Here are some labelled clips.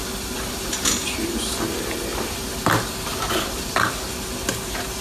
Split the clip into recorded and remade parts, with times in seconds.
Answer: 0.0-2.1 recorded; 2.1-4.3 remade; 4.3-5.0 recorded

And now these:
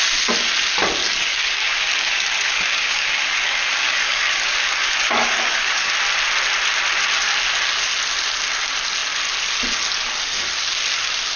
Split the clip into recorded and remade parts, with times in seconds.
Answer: 0.0-1.0 recorded; 1.0-5.9 remade; 5.9-11.4 recorded

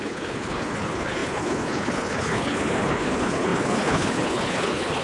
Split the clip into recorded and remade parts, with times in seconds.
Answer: 0.0-5.0 remade

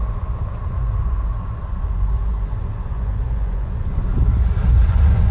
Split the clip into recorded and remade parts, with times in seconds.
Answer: 0.0-4.1 remade; 4.1-4.8 recorded; 4.8-5.3 remade

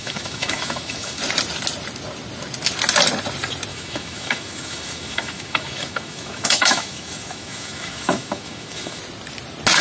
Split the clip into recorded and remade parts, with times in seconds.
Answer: 0.0-1.2 remade; 1.2-3.7 recorded; 3.7-9.0 remade; 9.0-9.8 recorded

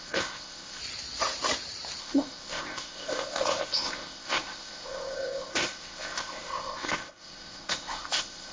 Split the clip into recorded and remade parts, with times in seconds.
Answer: 0.0-0.8 remade; 0.8-2.0 recorded; 2.0-8.5 remade